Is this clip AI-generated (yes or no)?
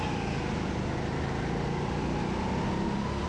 no